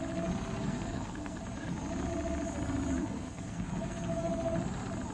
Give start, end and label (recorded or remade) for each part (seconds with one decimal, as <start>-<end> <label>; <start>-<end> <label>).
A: 0.0-0.6 recorded; 0.6-1.4 remade; 1.4-3.0 recorded; 3.0-4.3 remade; 4.3-5.1 recorded